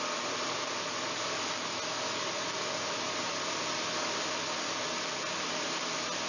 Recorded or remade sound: recorded